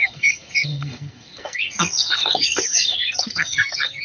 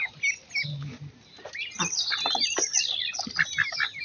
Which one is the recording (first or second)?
second